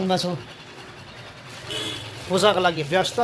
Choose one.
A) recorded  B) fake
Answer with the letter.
B